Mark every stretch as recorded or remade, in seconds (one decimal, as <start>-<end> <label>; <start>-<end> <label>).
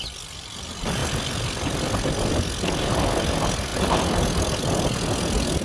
0.0-5.6 recorded